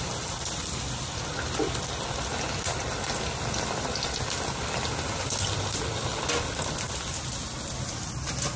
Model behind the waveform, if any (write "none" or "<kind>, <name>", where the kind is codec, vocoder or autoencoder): none